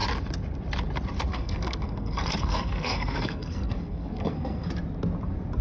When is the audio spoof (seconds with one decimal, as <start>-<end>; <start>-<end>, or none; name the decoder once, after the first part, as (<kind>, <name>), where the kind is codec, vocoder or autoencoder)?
1.3-4.7 (codec, SNAC)